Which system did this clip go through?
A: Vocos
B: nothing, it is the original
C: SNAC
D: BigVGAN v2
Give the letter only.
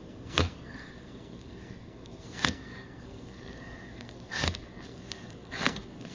C